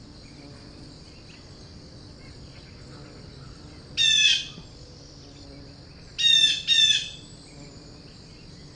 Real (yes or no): yes